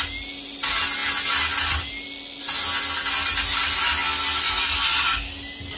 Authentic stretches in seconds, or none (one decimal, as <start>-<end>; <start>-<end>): 0.0-5.8